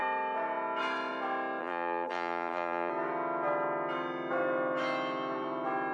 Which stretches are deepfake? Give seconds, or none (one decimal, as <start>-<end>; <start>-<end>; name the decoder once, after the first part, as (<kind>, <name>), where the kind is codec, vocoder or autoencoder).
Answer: 1.6-2.9 (vocoder, BigVGAN v2)

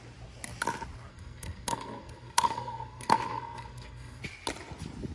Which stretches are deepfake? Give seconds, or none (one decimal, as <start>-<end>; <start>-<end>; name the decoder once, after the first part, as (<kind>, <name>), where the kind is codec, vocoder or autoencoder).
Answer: 1.1-4.2 (codec, SNAC)

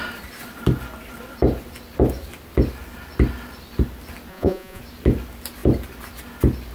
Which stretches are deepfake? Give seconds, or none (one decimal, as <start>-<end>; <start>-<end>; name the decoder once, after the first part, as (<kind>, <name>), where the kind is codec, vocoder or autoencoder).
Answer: 4.3-4.8 (vocoder, Vocos)

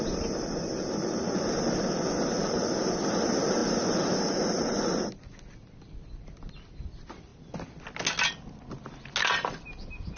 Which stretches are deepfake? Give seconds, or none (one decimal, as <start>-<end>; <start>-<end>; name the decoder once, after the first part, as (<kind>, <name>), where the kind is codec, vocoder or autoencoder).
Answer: none